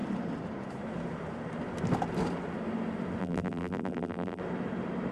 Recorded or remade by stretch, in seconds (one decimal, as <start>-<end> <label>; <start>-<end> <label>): 0.0-3.2 recorded; 3.2-4.4 remade; 4.4-5.1 recorded